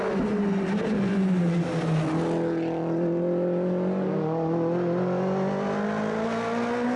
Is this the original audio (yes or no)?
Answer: yes